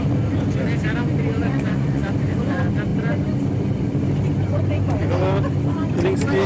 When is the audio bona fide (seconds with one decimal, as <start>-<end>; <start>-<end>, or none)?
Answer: 0.0-1.4; 2.1-6.5